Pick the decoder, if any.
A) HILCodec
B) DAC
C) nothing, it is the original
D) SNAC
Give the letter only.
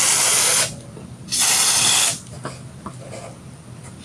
C